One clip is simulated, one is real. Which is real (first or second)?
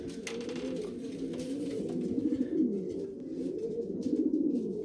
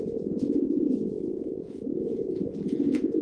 first